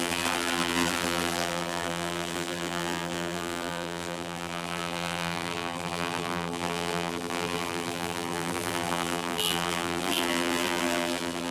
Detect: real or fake fake